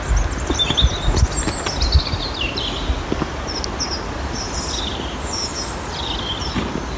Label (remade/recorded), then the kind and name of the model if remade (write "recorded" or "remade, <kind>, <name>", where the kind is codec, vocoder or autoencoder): recorded